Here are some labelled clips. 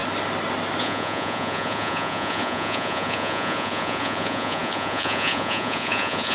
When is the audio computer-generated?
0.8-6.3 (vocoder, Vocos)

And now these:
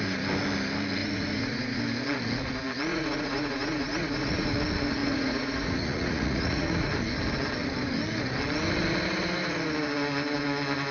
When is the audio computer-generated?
1.0-1.8 (vocoder, Vocos); 2.9-4.6; 5.0-6.9

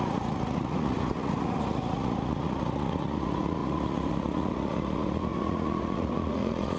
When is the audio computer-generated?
0.0-6.8 (vocoder, Vocos)

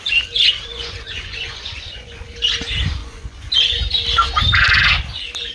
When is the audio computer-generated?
0.7-2.2 (vocoder, Vocos); 3.0-3.5